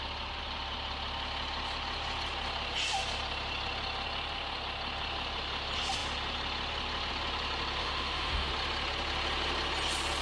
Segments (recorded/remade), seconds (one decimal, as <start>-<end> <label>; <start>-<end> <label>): 0.0-7.8 recorded; 7.8-8.5 remade; 8.5-10.2 recorded